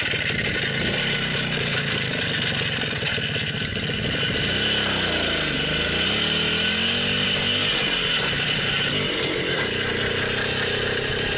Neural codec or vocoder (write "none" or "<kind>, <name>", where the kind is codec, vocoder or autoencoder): none